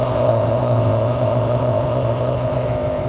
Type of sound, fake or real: fake